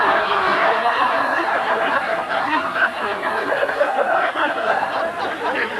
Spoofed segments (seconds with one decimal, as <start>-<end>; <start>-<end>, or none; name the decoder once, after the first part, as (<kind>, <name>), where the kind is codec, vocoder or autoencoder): 0.0-5.0 (codec, SNAC)